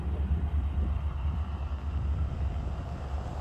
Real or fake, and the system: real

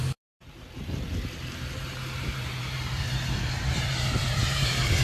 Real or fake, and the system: fake, vocoder, BigVGAN v2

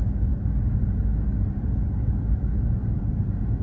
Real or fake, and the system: real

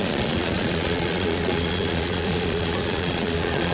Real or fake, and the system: fake, vocoder, Vocos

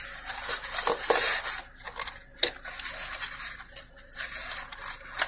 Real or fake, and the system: real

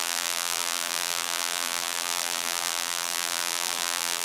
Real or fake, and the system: fake, vocoder, BigVGAN v2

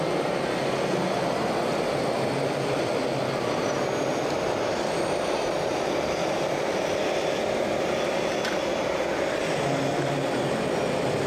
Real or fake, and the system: real